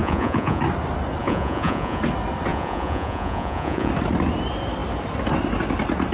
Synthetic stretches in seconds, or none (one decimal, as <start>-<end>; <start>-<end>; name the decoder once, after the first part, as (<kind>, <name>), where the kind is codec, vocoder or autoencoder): 0.0-0.6 (vocoder, Vocos); 1.2-2.0; 2.5-3.9